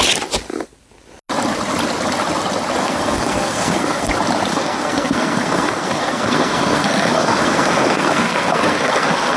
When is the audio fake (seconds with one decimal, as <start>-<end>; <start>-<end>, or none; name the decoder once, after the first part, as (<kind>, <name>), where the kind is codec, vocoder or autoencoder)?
2.8-4.1 (codec, SNAC); 4.5-9.4